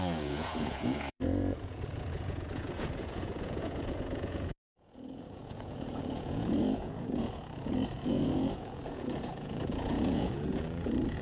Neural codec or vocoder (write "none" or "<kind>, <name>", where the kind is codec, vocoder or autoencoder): vocoder, Vocos